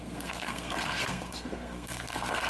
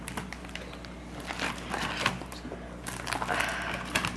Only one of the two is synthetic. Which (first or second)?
first